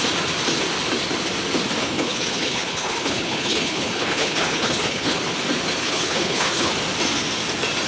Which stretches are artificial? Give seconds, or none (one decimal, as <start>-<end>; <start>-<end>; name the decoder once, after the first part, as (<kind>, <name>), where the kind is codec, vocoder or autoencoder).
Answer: 1.8-5.2 (codec, HILCodec); 5.8-6.7